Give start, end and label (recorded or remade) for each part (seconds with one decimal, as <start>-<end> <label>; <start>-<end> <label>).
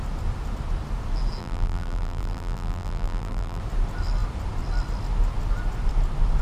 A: 0.0-1.4 recorded; 1.4-3.6 remade; 3.6-6.4 recorded